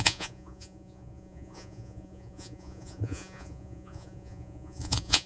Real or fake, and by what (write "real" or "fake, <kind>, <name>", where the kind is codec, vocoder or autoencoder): fake, vocoder, Vocos